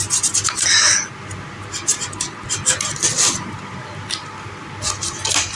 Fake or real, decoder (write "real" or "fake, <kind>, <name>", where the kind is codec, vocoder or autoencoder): real